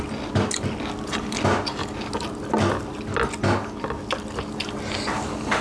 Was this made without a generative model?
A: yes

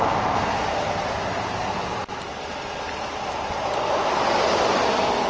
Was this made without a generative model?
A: yes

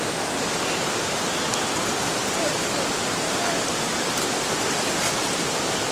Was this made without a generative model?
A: yes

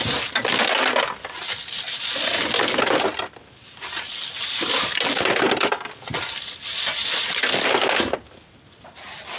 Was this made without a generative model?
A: yes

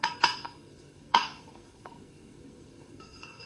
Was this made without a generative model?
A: no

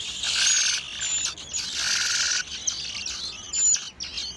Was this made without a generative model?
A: yes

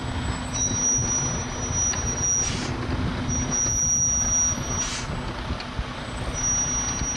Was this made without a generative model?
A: yes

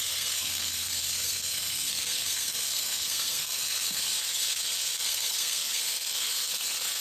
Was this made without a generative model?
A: no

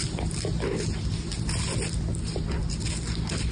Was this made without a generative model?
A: yes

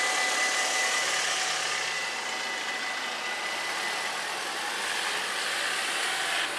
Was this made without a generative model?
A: yes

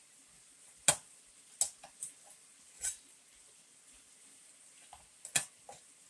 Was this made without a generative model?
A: yes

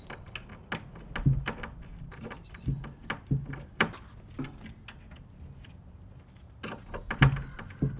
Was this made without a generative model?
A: yes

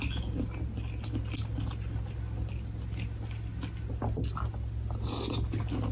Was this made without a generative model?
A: yes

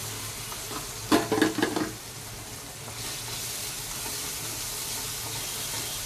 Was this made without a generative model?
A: yes